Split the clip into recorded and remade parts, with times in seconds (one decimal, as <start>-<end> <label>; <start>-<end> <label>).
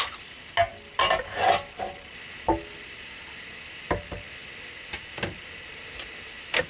0.0-6.7 recorded